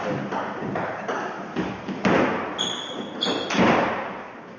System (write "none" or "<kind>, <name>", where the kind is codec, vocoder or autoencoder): none